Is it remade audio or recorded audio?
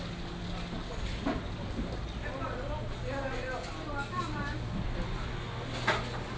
recorded